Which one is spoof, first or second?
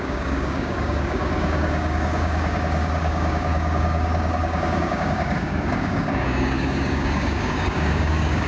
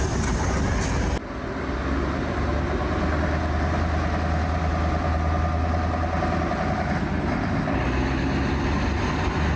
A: first